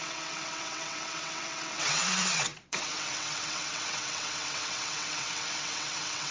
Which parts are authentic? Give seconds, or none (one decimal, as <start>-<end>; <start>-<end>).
none